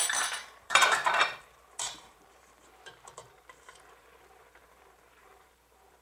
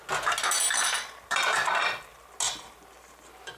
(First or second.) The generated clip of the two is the first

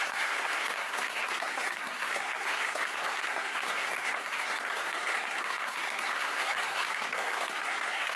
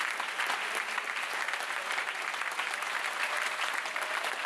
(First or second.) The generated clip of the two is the first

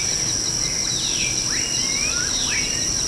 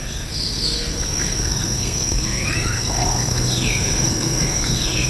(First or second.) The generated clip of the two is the second